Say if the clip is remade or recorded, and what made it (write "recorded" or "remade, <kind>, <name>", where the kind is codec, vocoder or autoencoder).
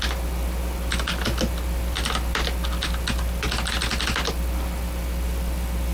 recorded